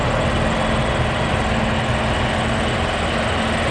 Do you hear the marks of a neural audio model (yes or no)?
no